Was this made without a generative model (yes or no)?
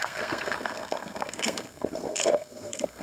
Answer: no